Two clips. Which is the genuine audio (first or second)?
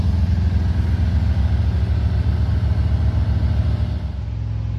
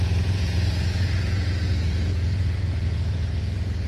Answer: first